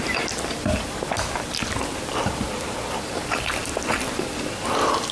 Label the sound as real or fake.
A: real